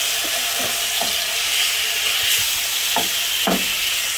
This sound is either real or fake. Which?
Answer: real